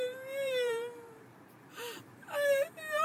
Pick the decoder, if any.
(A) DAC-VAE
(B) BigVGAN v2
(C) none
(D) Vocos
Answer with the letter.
B